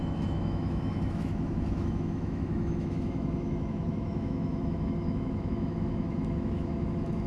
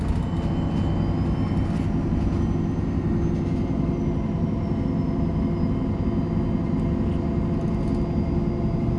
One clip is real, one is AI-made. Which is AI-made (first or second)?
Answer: first